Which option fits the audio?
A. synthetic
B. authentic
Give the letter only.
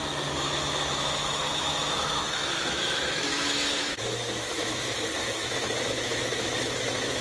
A